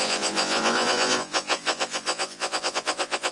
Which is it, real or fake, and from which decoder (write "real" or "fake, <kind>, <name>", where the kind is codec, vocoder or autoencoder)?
fake, vocoder, Vocos